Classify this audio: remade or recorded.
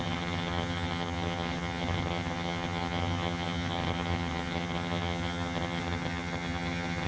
remade